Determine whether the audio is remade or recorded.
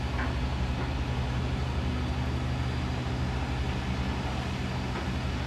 recorded